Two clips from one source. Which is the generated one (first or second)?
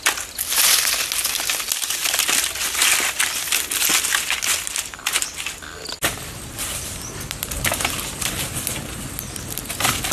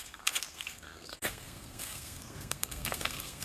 second